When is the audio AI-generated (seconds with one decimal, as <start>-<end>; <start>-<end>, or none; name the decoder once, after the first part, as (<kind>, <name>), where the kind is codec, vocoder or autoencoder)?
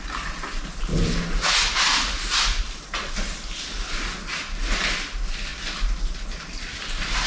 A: none